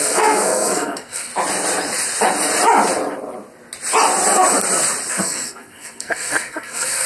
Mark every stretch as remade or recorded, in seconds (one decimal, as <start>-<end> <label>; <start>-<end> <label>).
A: 0.0-1.3 remade; 1.3-5.1 recorded; 5.1-7.1 remade